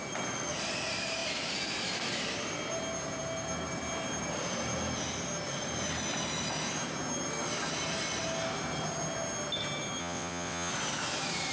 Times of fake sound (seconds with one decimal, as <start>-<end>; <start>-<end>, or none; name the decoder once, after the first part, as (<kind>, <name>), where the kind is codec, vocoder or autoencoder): 10.0-10.7 (vocoder, WaveNeXt)